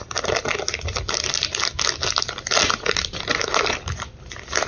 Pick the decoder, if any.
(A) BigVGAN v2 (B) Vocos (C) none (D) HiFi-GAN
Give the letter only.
C